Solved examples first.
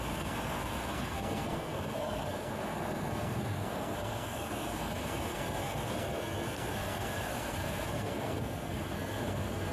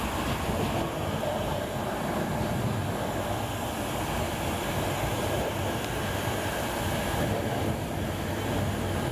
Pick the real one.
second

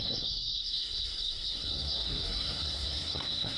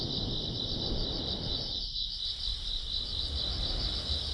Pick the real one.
second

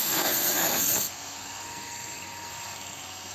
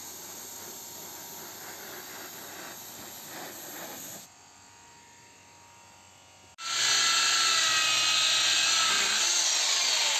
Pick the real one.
second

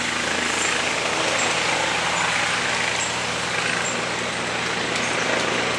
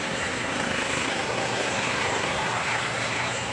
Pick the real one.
first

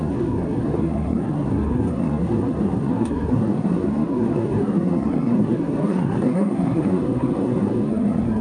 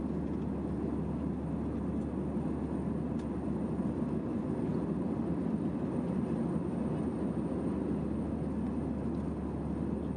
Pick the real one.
second